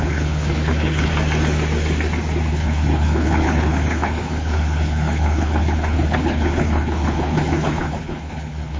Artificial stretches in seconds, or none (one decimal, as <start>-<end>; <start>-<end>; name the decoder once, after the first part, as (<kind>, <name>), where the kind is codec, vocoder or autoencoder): 0.0-1.1 (codec, HILCodec); 2.5-8.8

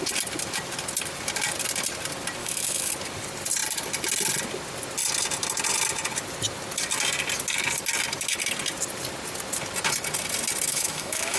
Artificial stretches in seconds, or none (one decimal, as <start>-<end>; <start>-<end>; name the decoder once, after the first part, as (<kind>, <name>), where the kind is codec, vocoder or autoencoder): 2.4-2.9 (autoencoder, DAC-VAE); 10.7-11.4

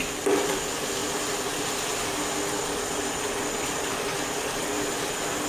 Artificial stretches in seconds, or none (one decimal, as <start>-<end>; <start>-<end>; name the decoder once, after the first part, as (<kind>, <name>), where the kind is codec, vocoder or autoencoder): none

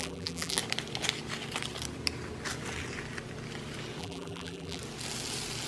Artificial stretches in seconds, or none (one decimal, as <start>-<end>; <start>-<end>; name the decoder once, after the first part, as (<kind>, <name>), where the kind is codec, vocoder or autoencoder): 0.0-0.6 (vocoder, BigVGAN v2); 4.0-4.8

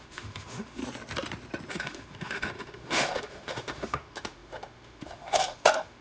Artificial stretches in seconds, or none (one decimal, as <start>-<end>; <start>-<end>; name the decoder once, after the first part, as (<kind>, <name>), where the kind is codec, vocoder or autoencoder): 0.0-0.8 (autoencoder, DAC-VAE); 1.7-6.0

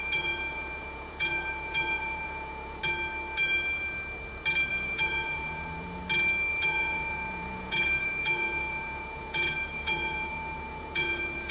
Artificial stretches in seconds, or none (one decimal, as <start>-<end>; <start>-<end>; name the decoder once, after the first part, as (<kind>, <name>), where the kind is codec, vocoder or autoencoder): 0.0-2.8 (vocoder, Vocos); 4.7-6.0; 6.5-11.5